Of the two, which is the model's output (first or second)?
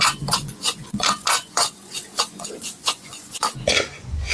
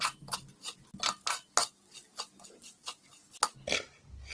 first